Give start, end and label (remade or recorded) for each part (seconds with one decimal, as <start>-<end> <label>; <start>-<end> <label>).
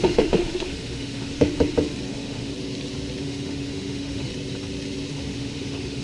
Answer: 0.0-1.5 remade; 1.5-2.1 recorded; 2.1-2.5 remade; 2.5-3.2 recorded; 3.2-4.3 remade; 4.3-5.1 recorded; 5.1-6.0 remade